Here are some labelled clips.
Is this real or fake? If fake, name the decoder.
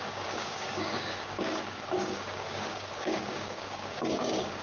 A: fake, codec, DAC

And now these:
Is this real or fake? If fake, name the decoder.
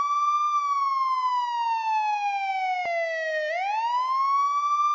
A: real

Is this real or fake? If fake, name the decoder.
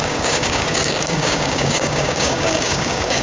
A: fake, codec, DAC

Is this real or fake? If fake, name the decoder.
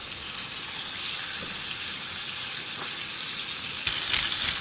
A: real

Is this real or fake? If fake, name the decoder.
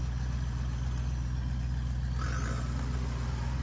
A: real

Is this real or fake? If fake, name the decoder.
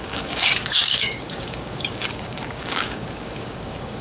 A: fake, codec, DAC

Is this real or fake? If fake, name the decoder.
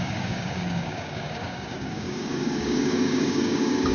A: fake, codec, DAC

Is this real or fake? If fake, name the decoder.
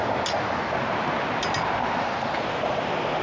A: real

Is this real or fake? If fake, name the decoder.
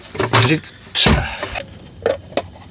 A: real